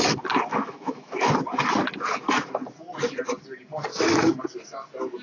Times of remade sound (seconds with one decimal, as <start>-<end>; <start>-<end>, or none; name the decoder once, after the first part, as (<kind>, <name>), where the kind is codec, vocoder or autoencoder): 0.5-1.3 (autoencoder, DAC-VAE); 3.9-4.4